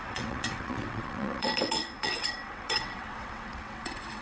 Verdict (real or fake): fake